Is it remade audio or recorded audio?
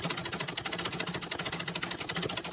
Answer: recorded